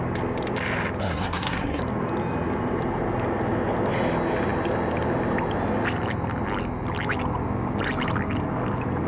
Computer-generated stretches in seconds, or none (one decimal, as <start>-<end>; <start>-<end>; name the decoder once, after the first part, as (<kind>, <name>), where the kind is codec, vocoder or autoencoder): 1.0-1.8 (codec, SNAC)